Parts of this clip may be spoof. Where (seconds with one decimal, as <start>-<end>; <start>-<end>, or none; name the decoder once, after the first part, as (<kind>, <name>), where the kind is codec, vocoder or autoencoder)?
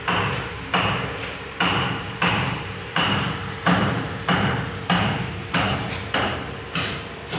0.0-7.4 (vocoder, BigVGAN v2)